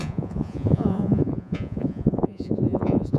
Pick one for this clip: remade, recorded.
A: remade